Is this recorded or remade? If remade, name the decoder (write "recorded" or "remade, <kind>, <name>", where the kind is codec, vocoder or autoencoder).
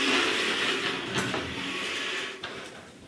recorded